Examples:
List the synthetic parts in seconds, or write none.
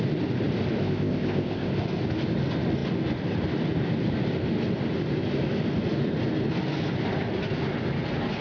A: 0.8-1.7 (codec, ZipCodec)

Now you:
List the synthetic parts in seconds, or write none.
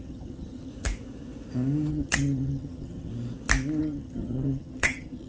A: 0.0-0.7 (vocoder, HiFi-GAN); 1.9-3.1; 3.8-5.3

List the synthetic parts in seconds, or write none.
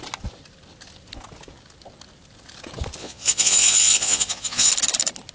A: 3.0-4.7 (vocoder, Vocos)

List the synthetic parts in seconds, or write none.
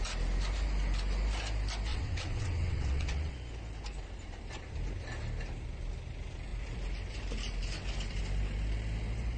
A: 1.9-3.3 (vocoder, WaveNeXt)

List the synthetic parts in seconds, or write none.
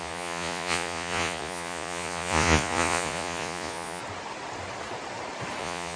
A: 0.0-4.0 (vocoder, Vocos); 5.6-6.0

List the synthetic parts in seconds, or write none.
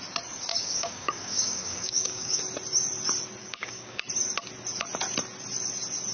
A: 0.5-2.4 (codec, DAC); 3.4-4.0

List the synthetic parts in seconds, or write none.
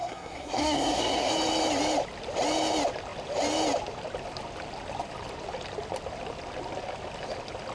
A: 0.0-1.3 (codec, SNAC)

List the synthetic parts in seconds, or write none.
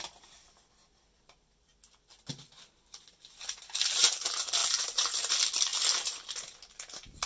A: 4.6-5.3 (vocoder, BigVGAN v2); 5.7-6.6